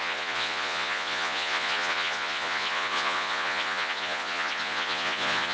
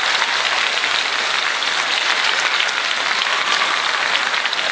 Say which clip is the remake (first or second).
first